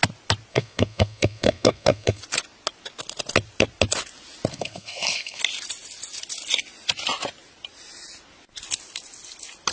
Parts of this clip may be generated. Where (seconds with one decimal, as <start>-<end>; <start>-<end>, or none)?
0.5-2.2; 4.5-5.4